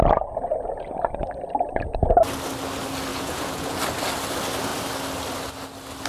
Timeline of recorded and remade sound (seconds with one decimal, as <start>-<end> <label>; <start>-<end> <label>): 0.0-3.1 recorded; 3.1-3.8 remade; 3.8-6.1 recorded